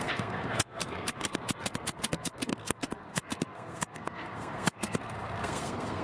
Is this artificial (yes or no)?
yes